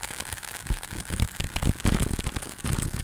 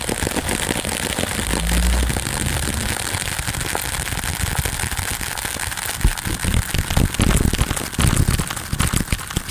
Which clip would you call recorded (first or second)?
second